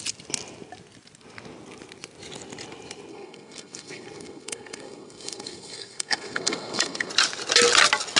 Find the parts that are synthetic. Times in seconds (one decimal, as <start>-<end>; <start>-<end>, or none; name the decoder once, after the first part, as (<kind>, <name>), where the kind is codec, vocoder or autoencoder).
3.1-7.1 (codec, SNAC)